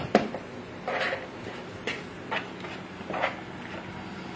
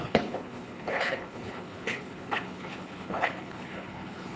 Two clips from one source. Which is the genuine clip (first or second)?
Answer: first